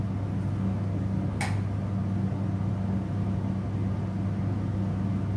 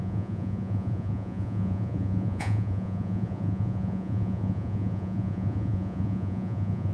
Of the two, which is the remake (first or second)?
second